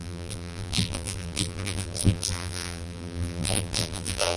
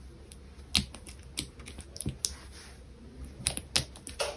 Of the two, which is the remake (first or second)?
first